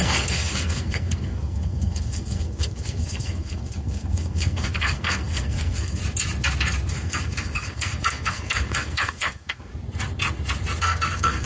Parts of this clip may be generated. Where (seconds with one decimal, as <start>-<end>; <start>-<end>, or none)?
0.0-6.0; 6.9-9.7; 10.8-11.5